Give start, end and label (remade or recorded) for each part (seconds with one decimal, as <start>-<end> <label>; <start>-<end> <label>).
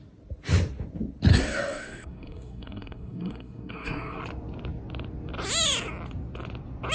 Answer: 0.0-1.3 recorded; 1.3-4.2 remade; 4.2-6.9 recorded